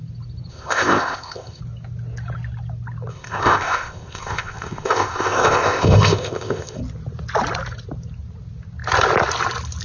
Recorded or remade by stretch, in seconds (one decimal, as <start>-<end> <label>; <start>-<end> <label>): 0.0-0.5 recorded; 0.5-1.6 remade; 1.6-3.1 recorded; 3.1-6.8 remade; 6.8-9.8 recorded